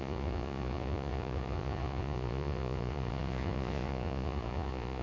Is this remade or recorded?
remade